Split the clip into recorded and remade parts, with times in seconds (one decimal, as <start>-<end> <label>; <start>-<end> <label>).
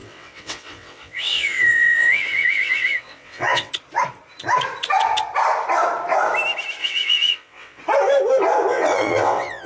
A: 0.0-3.7 remade; 3.7-6.8 recorded; 6.8-7.8 remade; 7.8-8.7 recorded; 8.7-9.7 remade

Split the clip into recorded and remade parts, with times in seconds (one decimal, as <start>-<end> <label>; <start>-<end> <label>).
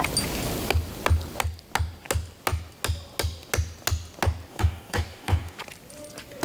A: 0.0-4.5 recorded; 4.5-5.6 remade; 5.6-6.4 recorded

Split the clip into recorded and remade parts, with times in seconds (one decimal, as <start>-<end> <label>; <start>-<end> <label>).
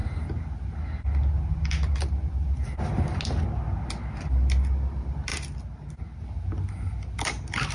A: 0.0-7.7 recorded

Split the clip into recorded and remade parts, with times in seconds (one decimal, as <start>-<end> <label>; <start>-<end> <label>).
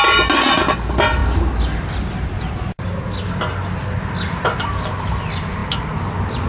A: 0.0-6.5 recorded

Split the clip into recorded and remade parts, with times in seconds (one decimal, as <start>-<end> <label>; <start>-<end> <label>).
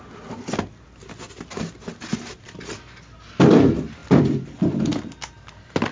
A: 0.0-5.9 recorded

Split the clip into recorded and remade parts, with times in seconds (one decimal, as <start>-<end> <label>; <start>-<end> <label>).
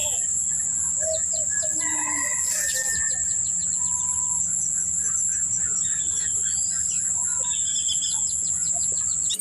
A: 0.0-3.2 recorded; 3.2-3.7 remade; 3.7-5.0 recorded; 5.0-7.1 remade; 7.1-9.4 recorded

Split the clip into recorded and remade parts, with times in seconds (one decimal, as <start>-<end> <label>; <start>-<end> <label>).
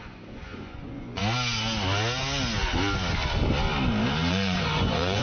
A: 0.0-1.2 remade; 1.2-4.3 recorded; 4.3-5.2 remade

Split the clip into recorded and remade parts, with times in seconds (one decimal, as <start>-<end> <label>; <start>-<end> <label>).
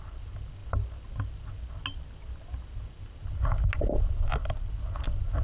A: 0.0-5.4 recorded